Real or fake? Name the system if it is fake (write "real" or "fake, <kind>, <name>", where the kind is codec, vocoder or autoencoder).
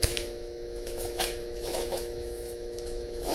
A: fake, autoencoder, DAC-VAE